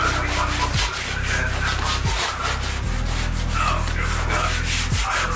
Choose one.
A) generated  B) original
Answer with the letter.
B